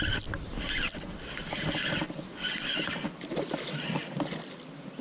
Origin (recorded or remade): recorded